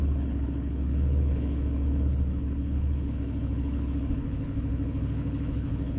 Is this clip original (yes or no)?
no